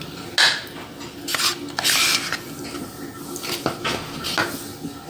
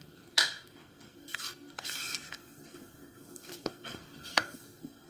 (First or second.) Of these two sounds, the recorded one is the first